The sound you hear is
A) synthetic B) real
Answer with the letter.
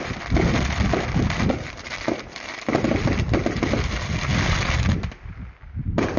B